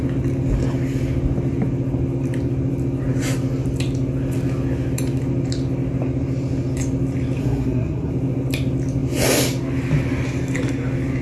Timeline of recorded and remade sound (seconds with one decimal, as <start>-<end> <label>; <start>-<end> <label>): 0.0-7.4 recorded; 7.4-8.1 remade; 8.1-11.2 recorded